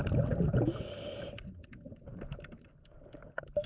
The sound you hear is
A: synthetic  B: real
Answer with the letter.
B